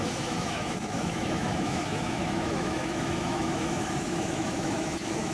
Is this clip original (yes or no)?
no